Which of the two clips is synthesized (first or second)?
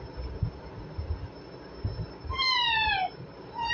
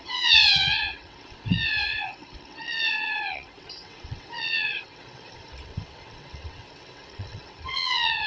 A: second